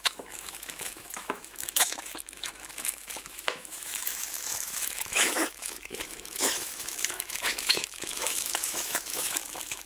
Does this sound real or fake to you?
fake